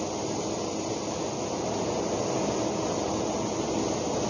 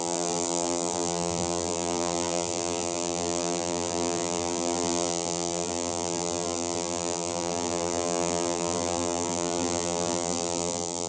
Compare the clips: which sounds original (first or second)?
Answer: first